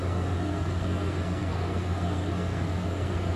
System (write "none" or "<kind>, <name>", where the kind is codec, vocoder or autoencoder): codec, SNAC